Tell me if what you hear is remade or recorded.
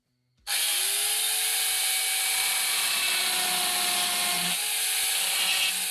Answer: recorded